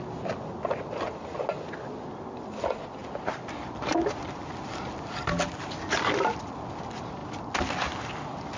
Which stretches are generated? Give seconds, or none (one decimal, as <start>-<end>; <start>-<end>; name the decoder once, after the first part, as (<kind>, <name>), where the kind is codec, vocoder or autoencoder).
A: none